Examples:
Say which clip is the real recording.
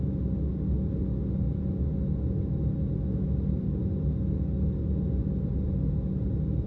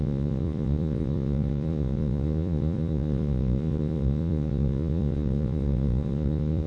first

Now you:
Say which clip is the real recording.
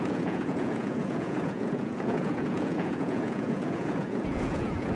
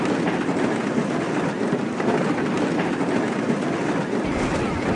second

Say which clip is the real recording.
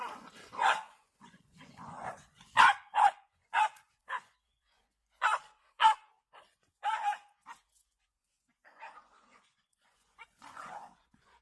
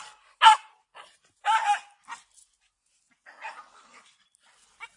second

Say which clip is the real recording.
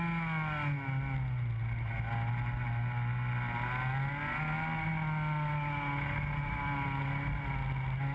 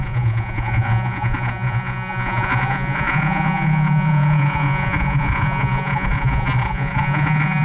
first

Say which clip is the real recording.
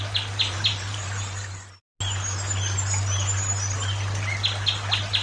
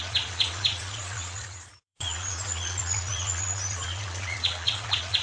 first